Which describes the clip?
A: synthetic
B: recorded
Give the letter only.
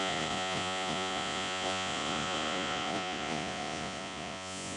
A